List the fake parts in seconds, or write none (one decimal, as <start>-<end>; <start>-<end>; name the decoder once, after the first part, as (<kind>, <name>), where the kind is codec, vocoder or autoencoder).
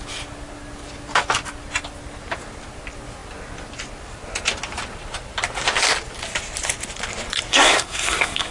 7.5-8.5 (codec, SNAC)